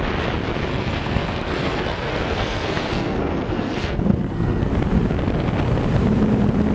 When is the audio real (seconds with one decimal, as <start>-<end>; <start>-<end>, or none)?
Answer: 0.0-0.7; 4.7-6.7